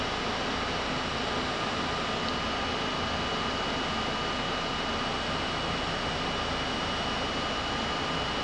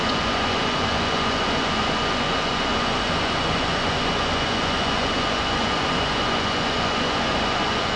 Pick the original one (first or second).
first